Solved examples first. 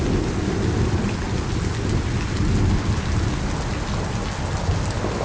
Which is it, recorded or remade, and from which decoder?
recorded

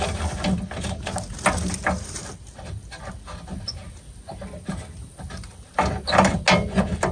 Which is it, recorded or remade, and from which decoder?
recorded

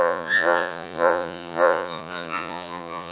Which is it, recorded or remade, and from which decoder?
remade, vocoder, Vocos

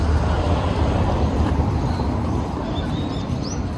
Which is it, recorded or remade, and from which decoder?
recorded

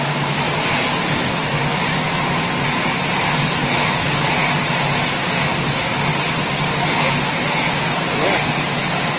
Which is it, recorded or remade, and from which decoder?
recorded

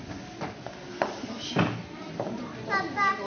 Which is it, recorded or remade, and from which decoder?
recorded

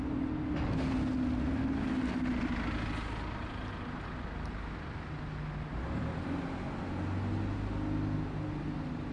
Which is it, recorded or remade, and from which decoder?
recorded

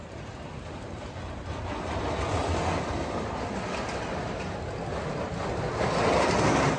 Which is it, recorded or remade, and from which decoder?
recorded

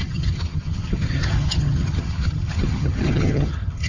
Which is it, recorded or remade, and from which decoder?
remade, vocoder, HiFi-GAN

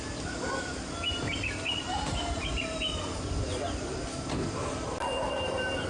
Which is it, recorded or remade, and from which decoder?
recorded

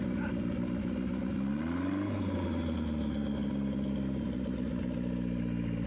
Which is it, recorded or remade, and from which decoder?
recorded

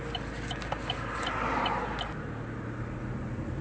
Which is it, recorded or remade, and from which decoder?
recorded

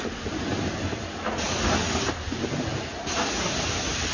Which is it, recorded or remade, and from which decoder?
recorded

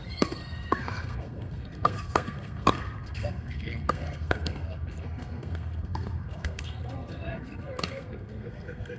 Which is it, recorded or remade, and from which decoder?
remade, codec, SNAC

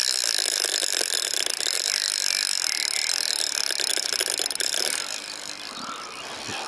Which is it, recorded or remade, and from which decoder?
recorded